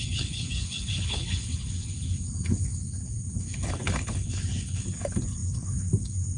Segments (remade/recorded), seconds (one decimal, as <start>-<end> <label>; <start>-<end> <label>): 0.0-6.4 remade